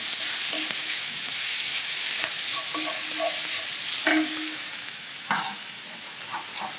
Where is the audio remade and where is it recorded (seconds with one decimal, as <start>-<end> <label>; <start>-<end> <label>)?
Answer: 0.0-0.8 recorded; 0.8-2.3 remade; 2.3-4.1 recorded; 4.1-6.2 remade; 6.2-6.8 recorded